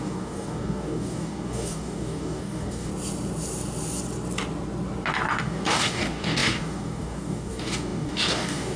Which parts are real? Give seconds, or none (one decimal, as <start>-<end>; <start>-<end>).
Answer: 2.9-5.4